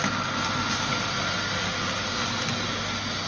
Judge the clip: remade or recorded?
recorded